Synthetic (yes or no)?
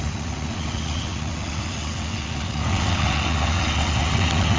yes